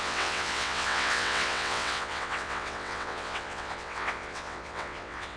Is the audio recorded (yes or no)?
no